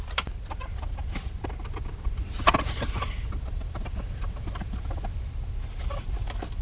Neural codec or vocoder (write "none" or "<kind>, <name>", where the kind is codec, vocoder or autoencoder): none